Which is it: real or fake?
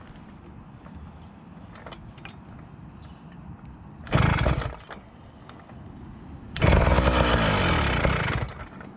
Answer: real